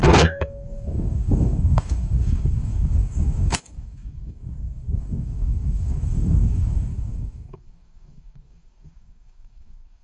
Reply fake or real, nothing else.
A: fake